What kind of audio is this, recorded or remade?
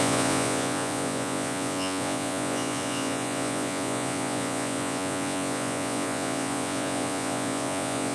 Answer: remade